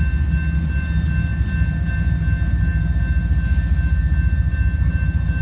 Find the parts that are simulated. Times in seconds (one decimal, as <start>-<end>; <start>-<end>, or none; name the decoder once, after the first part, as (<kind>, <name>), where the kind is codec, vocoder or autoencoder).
none